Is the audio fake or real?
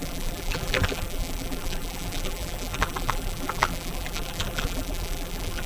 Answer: fake